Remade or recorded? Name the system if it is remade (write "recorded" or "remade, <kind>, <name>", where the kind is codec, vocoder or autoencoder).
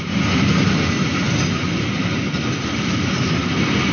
recorded